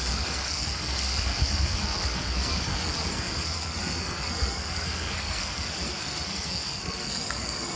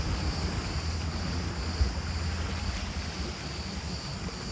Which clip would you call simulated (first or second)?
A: first